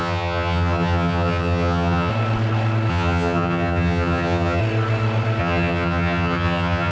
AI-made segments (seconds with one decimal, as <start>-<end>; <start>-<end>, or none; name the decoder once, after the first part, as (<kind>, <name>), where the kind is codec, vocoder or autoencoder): 0.0-2.1 (vocoder, HiFi-GAN); 2.9-4.6; 5.4-6.9